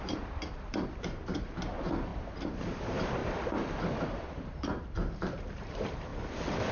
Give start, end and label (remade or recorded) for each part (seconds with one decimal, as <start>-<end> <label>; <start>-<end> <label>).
0.0-3.2 remade; 3.2-3.9 recorded; 3.9-6.1 remade; 6.1-6.7 recorded